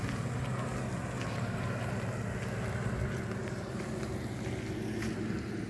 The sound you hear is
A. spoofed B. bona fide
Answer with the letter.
B